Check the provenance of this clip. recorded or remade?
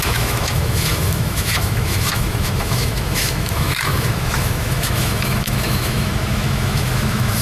remade